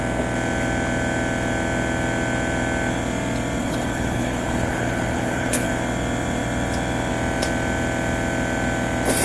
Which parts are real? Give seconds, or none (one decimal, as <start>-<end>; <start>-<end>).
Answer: 0.0-3.6; 5.7-9.2